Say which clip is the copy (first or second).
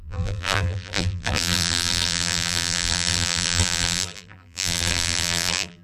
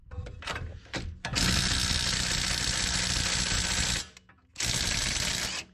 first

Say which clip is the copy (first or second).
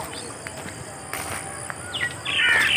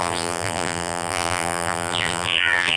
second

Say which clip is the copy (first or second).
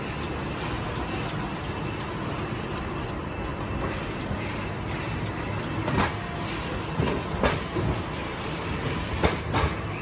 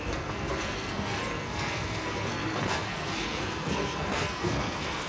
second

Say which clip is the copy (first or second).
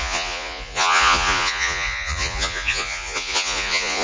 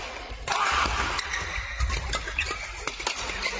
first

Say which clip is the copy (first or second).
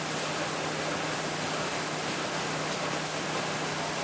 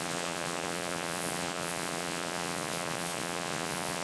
second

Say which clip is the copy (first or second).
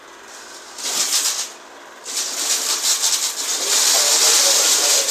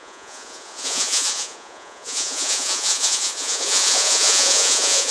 second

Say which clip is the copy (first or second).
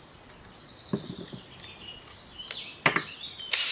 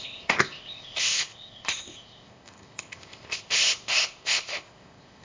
second